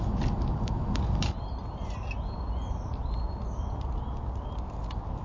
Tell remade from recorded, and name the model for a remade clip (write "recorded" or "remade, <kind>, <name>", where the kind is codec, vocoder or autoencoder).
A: recorded